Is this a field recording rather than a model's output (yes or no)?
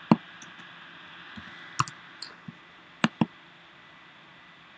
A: yes